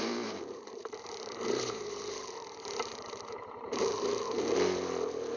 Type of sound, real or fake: fake